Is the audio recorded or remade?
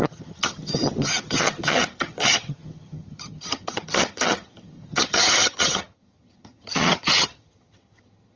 remade